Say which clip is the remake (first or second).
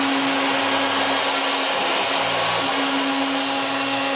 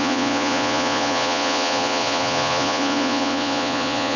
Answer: second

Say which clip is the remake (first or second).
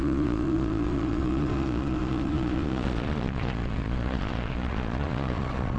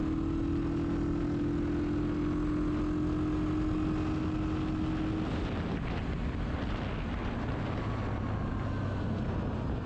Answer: first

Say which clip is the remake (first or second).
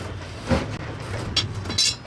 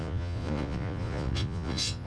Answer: second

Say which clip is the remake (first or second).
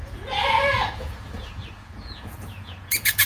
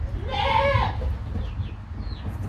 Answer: first